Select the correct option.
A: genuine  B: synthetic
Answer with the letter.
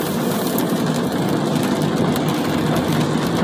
A